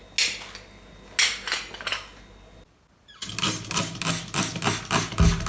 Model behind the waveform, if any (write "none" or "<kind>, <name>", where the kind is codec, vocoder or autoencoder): none